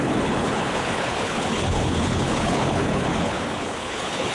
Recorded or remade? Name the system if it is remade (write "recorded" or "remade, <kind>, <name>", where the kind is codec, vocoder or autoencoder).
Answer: remade, codec, HILCodec